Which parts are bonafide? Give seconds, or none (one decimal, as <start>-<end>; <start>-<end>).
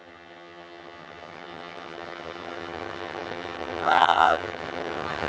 none